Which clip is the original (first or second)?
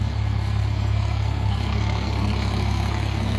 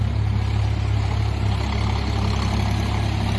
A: second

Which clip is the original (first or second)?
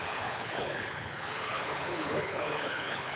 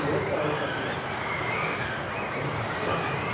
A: second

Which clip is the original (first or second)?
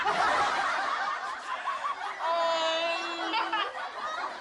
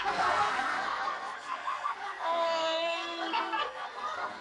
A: first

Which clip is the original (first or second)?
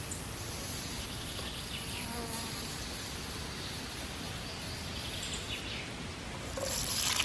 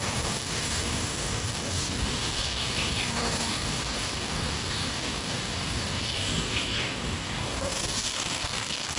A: first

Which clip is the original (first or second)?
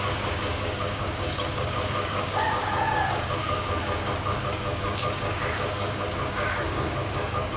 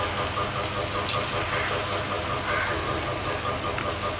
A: second